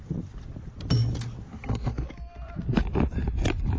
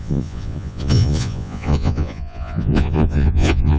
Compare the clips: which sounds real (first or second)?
first